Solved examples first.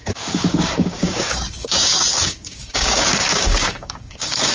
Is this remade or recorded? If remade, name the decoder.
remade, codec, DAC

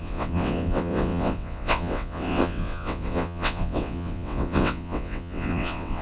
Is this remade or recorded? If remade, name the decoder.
remade, vocoder, WaveNeXt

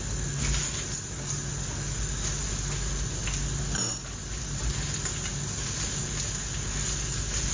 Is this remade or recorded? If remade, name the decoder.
recorded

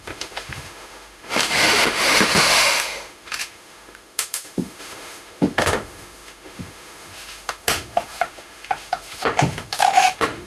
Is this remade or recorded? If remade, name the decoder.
remade, autoencoder, DAC-VAE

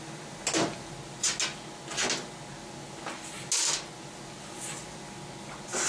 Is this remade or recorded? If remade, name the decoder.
recorded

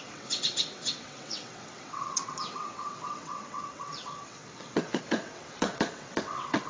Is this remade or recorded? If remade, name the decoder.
remade, vocoder, WaveNeXt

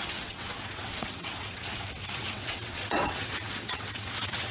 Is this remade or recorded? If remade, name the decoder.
remade, vocoder, WaveNeXt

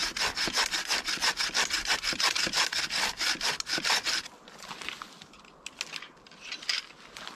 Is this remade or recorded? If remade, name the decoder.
recorded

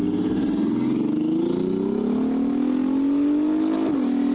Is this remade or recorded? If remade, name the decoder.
recorded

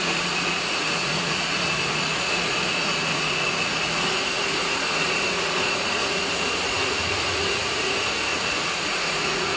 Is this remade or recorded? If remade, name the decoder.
remade, vocoder, Vocos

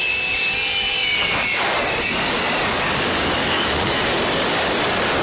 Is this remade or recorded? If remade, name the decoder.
remade, codec, DAC